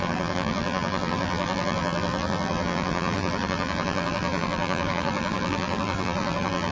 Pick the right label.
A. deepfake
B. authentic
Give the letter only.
A